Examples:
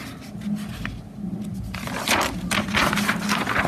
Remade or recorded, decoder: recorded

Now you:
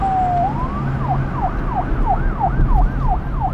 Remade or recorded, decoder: recorded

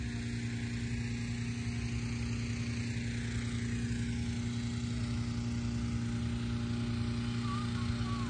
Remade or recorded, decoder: recorded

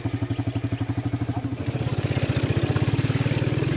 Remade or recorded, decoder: recorded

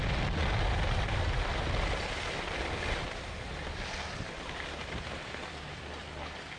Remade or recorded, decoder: recorded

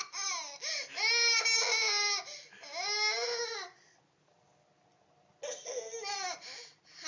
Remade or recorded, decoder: recorded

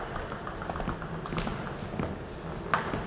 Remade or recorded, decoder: recorded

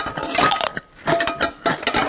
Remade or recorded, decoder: recorded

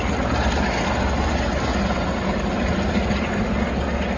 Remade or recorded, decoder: recorded